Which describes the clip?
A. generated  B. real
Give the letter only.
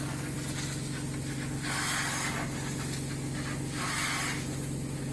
B